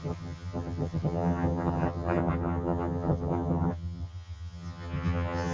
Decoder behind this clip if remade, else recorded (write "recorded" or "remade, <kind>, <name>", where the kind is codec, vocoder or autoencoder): remade, vocoder, HiFi-GAN